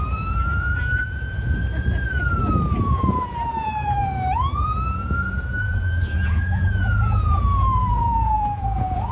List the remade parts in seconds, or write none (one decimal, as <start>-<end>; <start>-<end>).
0.0-1.6; 2.8-9.1